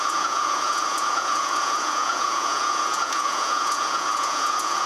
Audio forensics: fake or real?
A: fake